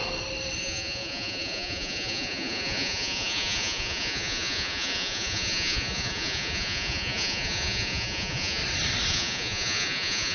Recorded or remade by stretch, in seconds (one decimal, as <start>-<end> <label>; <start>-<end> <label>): 0.0-0.6 recorded; 0.6-8.6 remade; 8.6-9.1 recorded; 9.1-10.3 remade